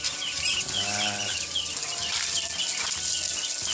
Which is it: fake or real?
real